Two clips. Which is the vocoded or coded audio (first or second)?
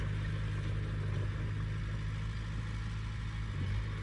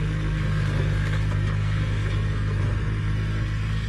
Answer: second